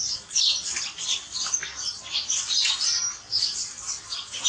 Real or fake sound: fake